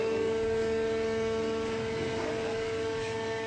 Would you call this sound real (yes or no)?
no